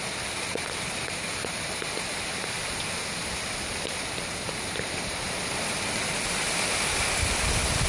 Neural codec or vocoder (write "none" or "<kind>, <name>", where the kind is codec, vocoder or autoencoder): none